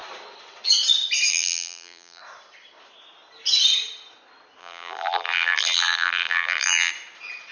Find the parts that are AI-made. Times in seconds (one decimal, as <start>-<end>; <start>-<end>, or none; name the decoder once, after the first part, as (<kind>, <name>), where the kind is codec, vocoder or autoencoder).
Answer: 1.3-2.2 (vocoder, BigVGAN v2); 4.6-6.9